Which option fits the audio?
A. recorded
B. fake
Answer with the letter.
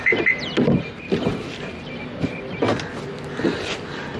A